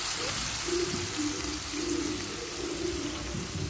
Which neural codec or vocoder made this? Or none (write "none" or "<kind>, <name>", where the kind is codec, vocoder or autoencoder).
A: vocoder, BigVGAN v2